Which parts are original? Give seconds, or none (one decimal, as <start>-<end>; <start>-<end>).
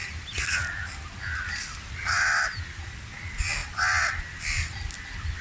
0.0-5.4